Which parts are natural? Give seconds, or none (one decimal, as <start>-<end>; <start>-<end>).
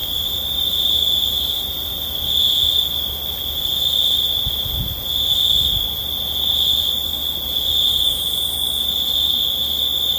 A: 1.6-10.2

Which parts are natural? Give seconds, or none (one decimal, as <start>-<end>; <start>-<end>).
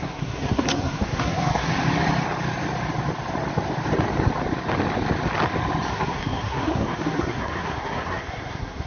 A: 1.7-5.9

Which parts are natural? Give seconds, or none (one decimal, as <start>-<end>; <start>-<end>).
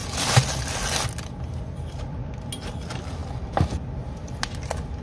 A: 0.0-5.0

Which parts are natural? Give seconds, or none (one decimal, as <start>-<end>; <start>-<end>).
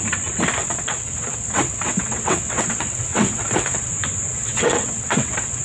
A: 0.0-0.6; 3.9-4.3